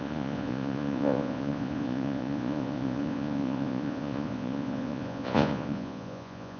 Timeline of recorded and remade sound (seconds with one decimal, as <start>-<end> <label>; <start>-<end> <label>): 0.0-6.6 remade